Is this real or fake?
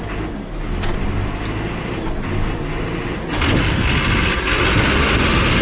real